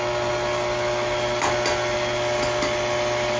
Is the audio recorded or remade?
recorded